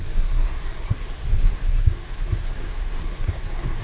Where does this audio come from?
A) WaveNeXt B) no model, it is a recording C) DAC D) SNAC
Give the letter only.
D